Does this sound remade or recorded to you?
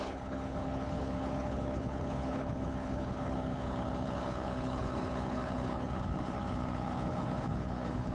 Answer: remade